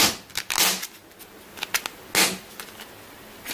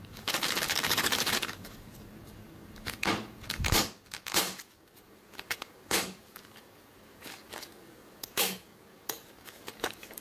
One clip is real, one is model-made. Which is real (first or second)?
first